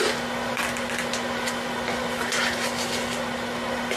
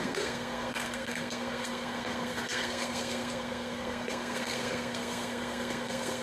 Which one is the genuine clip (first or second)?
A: first